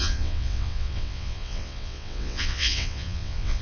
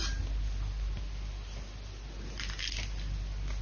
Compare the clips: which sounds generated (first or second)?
first